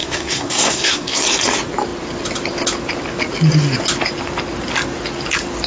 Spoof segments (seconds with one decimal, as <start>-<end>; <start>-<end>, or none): 0.0-1.2